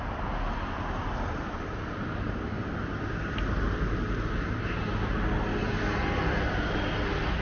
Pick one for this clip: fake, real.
real